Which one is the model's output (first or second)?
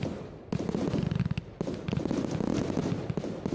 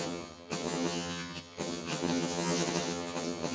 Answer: second